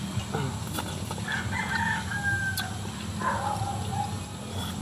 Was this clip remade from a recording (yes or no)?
no